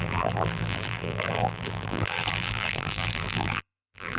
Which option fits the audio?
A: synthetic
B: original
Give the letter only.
A